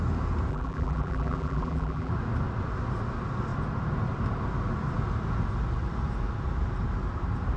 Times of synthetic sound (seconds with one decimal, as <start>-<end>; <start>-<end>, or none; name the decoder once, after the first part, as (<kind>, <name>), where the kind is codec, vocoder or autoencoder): 0.5-2.1 (vocoder, BigVGAN v2)